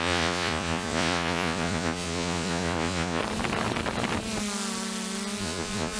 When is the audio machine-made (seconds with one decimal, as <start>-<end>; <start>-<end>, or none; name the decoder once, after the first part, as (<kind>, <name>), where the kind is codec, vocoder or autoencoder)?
0.0-3.2 (vocoder, Vocos); 5.4-6.0